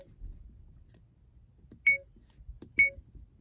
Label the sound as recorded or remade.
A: recorded